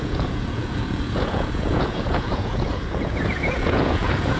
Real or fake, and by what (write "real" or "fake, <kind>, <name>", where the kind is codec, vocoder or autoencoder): fake, vocoder, Vocos